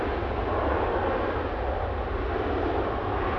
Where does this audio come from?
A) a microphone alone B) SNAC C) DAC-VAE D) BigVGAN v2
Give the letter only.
A